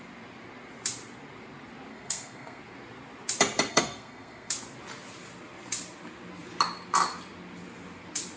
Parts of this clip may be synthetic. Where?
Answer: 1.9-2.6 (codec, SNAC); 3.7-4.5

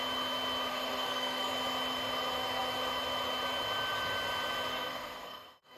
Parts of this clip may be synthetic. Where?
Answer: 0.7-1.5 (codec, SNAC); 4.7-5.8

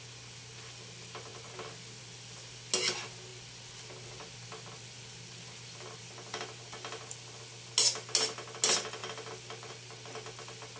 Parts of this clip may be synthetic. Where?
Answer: none

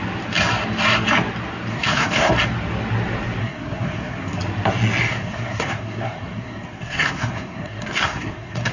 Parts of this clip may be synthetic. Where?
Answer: 1.7-2.3 (codec, SNAC); 3.4-4.4; 5.1-8.7

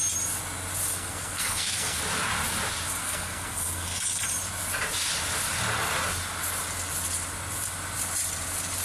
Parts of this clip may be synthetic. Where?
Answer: 0.9-2.0 (codec, SNAC); 3.0-4.2